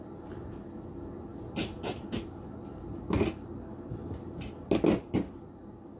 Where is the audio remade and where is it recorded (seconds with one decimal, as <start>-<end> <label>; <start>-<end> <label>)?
0.0-6.0 recorded